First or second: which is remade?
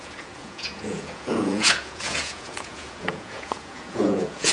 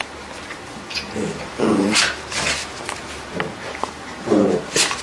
first